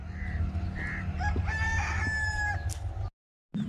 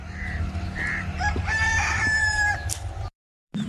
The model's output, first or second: second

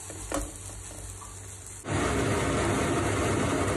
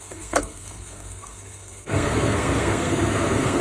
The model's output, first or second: second